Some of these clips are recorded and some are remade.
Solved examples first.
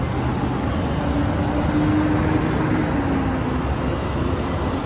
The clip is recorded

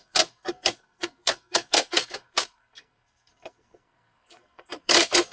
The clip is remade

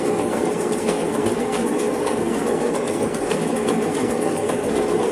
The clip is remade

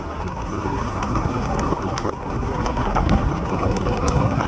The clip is remade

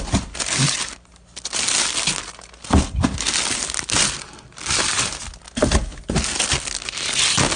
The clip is recorded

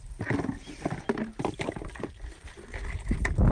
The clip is recorded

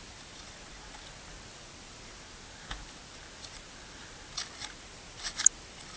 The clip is recorded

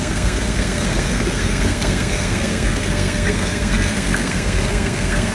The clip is remade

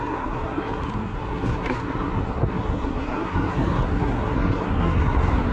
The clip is remade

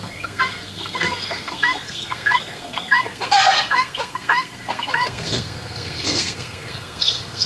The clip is remade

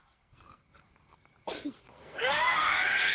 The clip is remade